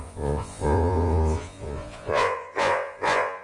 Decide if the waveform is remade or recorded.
remade